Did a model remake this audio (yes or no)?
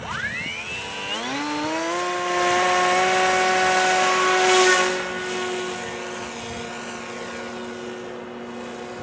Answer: no